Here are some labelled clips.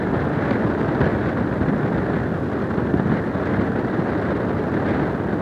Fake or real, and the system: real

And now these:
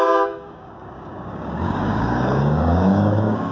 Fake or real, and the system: fake, codec, DAC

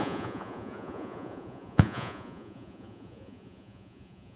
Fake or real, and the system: fake, vocoder, Vocos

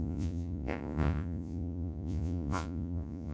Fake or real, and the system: fake, vocoder, Vocos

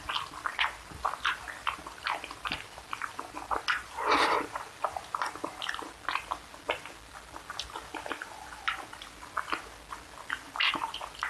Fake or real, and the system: real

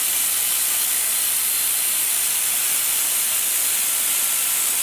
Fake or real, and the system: real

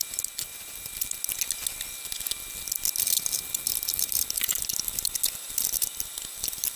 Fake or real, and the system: real